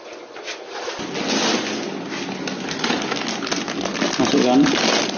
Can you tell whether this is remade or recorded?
recorded